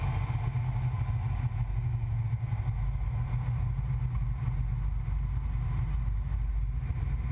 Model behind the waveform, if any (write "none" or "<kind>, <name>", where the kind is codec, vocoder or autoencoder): none